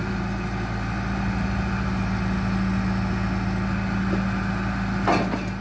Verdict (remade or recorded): recorded